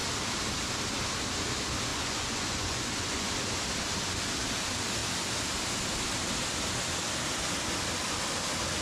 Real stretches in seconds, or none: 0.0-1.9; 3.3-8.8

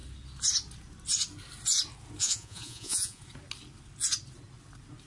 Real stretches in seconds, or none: 0.0-2.2; 3.2-5.1